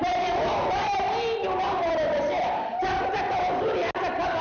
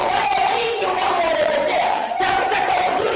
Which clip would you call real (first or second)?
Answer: first